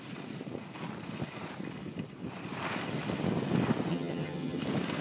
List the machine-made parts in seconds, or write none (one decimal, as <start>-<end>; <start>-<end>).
3.9-4.6